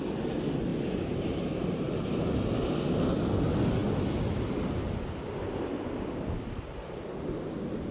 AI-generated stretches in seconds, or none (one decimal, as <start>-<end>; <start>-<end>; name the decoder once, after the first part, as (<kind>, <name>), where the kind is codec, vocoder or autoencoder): none